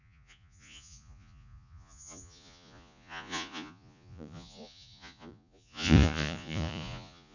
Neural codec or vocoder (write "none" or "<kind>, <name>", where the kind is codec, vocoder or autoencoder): vocoder, Vocos